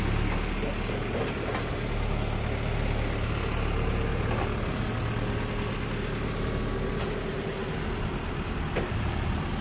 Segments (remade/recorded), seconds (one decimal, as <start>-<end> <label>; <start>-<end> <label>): 0.0-9.6 recorded